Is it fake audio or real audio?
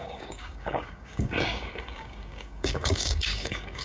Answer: fake